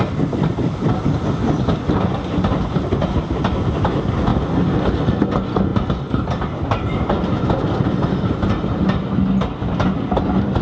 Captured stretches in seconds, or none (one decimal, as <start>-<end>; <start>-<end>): 0.0-10.6